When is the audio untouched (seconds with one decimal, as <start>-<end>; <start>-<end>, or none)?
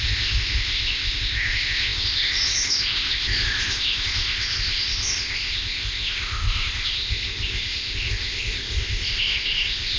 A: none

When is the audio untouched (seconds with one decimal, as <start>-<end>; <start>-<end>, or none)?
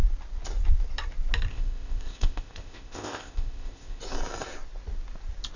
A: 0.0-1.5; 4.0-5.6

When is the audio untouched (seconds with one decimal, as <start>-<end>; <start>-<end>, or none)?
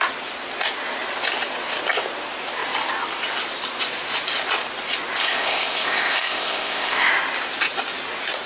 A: 0.0-5.2; 7.1-8.5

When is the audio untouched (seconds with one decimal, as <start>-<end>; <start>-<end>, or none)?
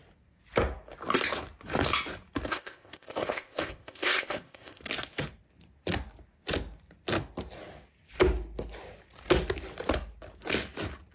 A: 0.0-2.5; 4.8-11.1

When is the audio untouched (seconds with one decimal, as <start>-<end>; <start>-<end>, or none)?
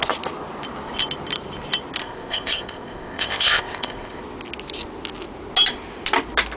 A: 0.0-2.0; 4.2-6.6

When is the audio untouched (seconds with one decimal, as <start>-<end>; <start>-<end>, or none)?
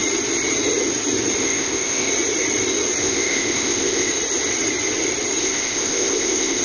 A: 0.0-1.4; 2.1-3.0; 4.1-5.4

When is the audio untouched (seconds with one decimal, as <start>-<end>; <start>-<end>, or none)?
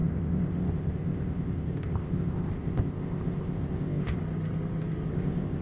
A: 4.2-5.1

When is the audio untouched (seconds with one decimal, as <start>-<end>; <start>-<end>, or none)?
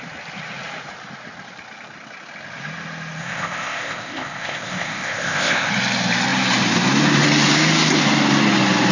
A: 0.0-3.2; 5.7-8.9